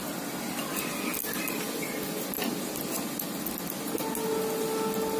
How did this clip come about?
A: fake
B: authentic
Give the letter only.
B